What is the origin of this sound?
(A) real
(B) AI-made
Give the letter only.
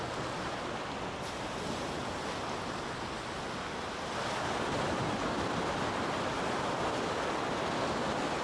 A